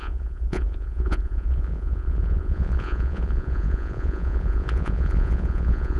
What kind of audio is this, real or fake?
fake